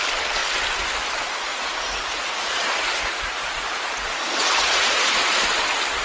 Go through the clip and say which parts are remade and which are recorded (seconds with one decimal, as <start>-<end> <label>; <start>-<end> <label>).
0.0-1.5 recorded; 1.5-5.1 remade; 5.1-6.0 recorded